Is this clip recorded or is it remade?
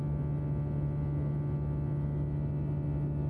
recorded